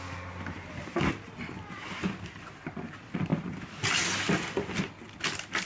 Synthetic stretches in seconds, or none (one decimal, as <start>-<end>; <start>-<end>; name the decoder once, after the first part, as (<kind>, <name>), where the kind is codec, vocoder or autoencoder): none